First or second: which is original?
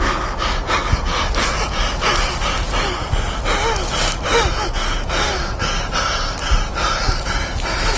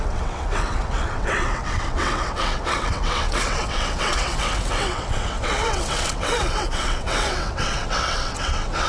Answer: first